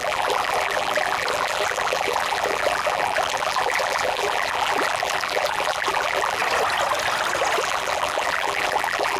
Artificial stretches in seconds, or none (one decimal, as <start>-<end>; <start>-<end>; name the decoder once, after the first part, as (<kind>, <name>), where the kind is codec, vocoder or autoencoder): 0.0-6.4 (vocoder, BigVGAN v2); 7.6-9.2